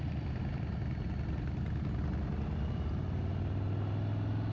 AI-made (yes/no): no